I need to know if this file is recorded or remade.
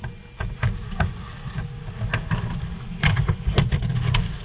recorded